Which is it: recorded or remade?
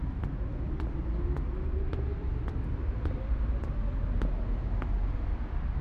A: recorded